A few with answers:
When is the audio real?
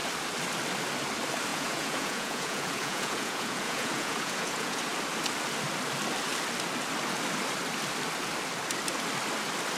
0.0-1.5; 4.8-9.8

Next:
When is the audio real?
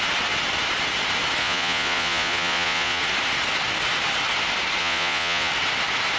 0.0-1.4; 3.0-4.8; 5.5-6.2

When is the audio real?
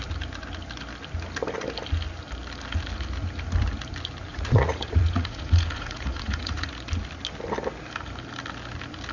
0.0-4.3; 6.7-9.1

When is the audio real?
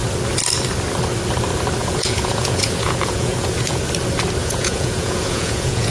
0.0-1.8; 3.8-4.4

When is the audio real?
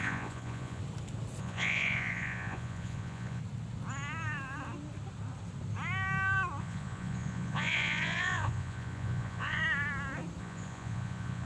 0.8-1.4; 3.4-6.6; 9.6-10.4